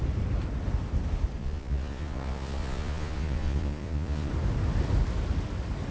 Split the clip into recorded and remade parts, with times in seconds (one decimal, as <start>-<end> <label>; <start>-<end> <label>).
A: 0.0-1.4 recorded; 1.4-4.3 remade; 4.3-5.9 recorded